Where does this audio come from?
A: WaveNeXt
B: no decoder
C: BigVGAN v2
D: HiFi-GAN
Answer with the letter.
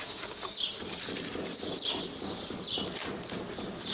B